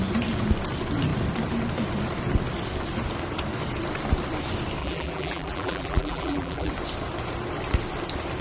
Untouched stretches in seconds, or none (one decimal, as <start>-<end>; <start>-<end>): 0.0-4.8; 6.7-8.4